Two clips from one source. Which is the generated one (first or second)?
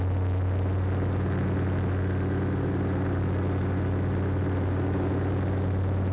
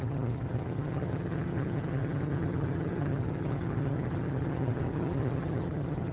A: second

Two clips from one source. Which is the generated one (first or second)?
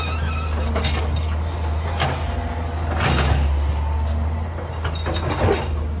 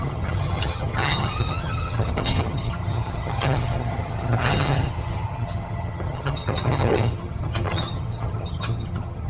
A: second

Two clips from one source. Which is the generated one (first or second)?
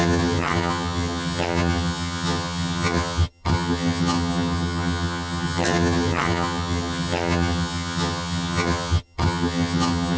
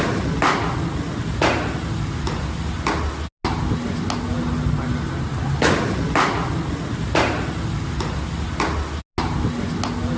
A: first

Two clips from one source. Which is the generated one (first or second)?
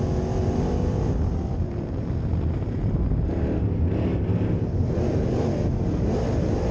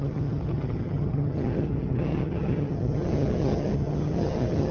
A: second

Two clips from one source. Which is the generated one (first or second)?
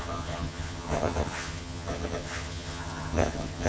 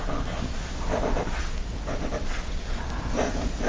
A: first